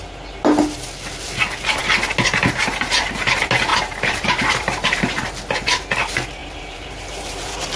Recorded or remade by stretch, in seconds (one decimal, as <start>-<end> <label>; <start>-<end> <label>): 0.0-3.7 recorded; 3.7-5.0 remade; 5.0-6.4 recorded; 6.4-7.8 remade